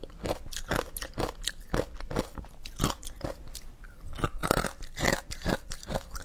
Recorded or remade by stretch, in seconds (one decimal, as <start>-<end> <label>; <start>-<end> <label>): 0.0-6.2 recorded